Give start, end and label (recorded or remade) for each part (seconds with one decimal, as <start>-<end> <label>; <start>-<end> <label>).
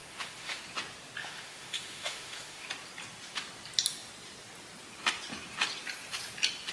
0.0-0.6 remade; 0.6-1.2 recorded; 1.2-2.7 remade; 2.7-6.7 recorded